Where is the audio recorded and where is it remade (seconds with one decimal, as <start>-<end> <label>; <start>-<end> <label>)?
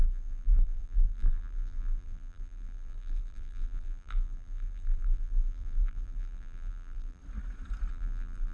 0.0-7.2 remade; 7.2-7.9 recorded; 7.9-8.5 remade